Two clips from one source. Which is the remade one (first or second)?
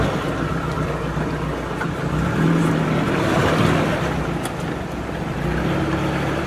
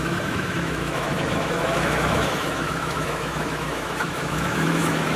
second